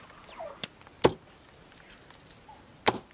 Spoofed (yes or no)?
no